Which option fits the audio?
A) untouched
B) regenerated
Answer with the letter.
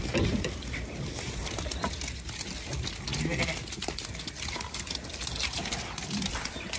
A